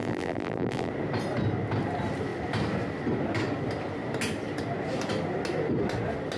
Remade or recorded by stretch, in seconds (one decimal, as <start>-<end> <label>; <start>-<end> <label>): 0.0-0.9 remade; 0.9-6.4 recorded